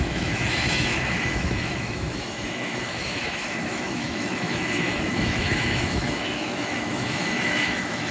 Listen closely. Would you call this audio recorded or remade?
remade